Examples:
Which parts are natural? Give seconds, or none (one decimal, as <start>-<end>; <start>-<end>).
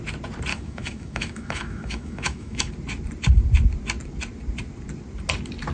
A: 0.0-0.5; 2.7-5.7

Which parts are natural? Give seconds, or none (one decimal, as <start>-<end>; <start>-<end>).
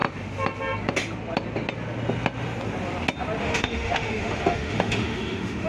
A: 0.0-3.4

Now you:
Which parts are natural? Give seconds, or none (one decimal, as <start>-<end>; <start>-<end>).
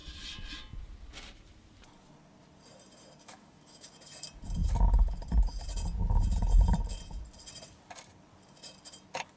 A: 0.0-3.2; 3.9-9.4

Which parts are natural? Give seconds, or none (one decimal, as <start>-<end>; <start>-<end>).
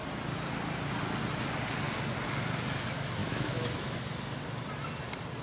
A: 0.0-3.2; 4.0-5.4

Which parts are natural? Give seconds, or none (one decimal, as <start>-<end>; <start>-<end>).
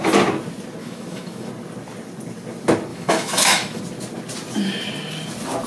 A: 0.0-0.8; 1.5-2.9; 3.8-5.7